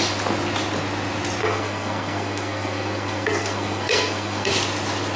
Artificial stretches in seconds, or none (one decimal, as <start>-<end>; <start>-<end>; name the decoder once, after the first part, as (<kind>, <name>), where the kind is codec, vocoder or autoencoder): 1.4-4.5 (codec, SNAC)